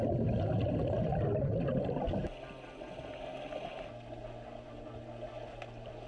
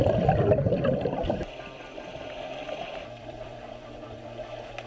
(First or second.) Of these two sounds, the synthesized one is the second